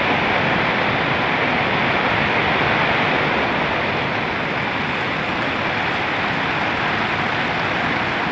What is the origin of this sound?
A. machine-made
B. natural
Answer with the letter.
B